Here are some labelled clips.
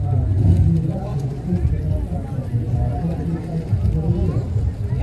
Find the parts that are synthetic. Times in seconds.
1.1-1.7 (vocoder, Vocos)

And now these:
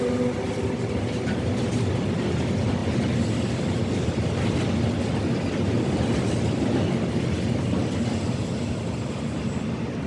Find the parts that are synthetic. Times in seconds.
none

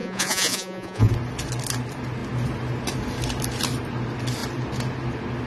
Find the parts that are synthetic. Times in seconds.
0.0-1.1 (vocoder, Vocos)

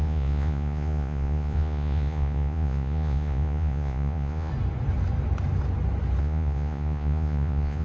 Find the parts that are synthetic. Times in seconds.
0.0-4.5 (vocoder, Vocos); 6.2-7.8

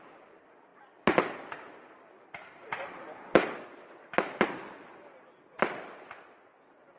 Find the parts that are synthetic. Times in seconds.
none